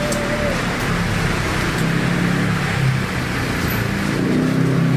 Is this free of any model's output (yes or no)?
yes